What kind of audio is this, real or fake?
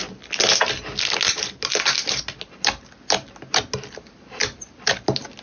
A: real